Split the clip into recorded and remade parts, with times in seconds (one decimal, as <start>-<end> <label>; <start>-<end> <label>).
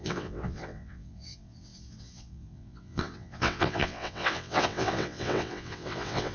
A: 0.0-6.3 remade